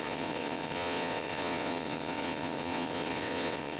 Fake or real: fake